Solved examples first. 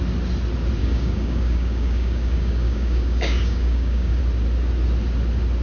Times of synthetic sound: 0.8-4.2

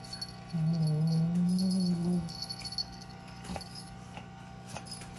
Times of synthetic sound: 2.8-4.7

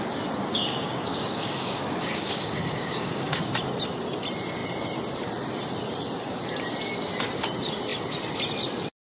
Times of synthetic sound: 0.5-3.4

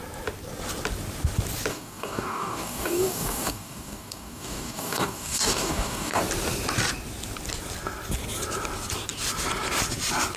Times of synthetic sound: 1.7-6.2

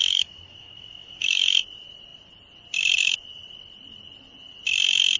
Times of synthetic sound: 0.0-1.6

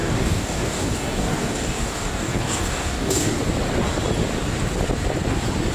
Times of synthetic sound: 0.0-3.4